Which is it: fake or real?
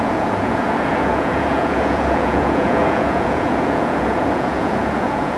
fake